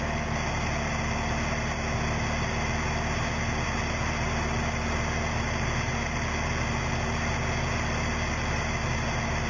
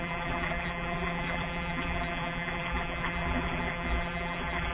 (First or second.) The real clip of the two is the first